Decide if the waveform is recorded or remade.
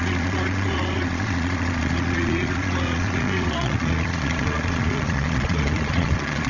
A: remade